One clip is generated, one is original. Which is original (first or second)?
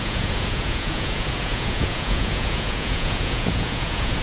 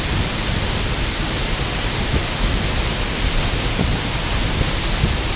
second